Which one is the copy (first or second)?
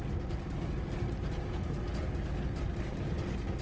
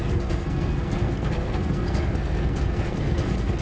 second